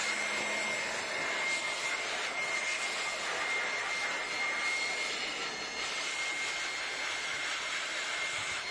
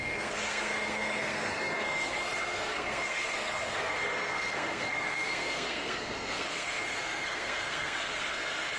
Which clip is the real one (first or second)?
first